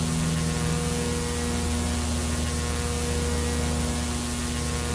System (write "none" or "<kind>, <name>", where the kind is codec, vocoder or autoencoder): none